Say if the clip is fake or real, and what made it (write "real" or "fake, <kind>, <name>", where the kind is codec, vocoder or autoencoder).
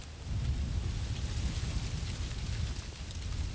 real